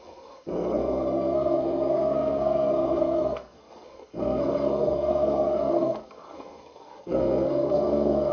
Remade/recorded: remade